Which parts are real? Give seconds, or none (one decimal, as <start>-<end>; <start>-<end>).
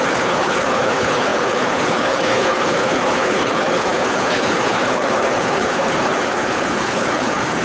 none